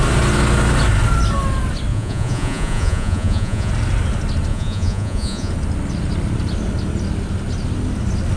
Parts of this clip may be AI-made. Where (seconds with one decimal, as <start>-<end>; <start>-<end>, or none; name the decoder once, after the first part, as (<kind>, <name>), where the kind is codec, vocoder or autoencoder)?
1.9-3.7 (vocoder, Vocos); 4.5-5.5

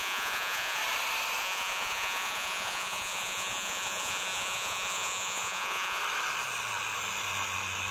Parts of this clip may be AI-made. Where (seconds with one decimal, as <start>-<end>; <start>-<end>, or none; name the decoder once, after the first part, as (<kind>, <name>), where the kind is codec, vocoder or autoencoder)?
0.0-0.8 (vocoder, Vocos); 1.4-6.0